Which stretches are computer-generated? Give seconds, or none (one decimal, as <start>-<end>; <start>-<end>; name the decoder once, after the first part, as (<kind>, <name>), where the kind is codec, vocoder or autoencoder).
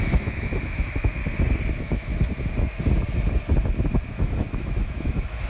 0.0-1.2 (autoencoder, DAC-VAE); 1.7-2.1; 4.1-5.5